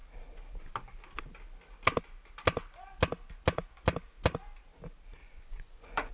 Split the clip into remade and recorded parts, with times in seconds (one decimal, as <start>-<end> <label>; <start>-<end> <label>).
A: 0.0-5.2 recorded; 5.2-6.1 remade